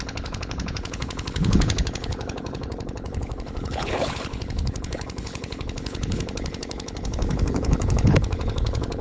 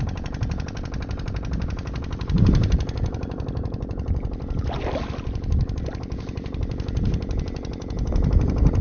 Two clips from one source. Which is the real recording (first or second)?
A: second